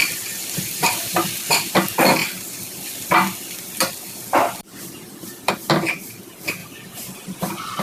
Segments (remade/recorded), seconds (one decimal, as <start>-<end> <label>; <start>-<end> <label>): 0.0-1.7 remade; 1.7-2.2 recorded; 2.2-5.5 remade; 5.5-6.6 recorded; 6.6-7.8 remade